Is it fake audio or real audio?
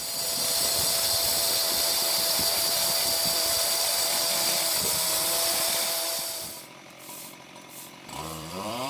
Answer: fake